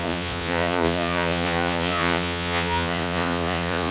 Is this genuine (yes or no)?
no